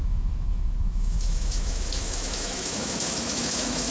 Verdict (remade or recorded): remade